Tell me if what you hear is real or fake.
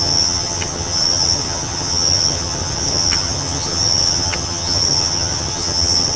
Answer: fake